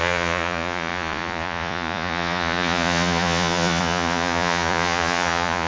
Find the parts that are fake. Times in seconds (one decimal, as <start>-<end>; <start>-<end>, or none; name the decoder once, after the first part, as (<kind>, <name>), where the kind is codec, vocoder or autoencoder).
0.0-5.7 (vocoder, Vocos)